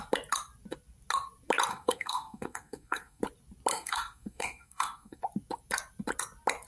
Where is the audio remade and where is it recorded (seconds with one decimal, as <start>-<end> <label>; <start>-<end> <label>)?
0.0-1.7 recorded; 1.7-3.2 remade; 3.2-3.7 recorded; 3.7-5.2 remade; 5.2-6.7 recorded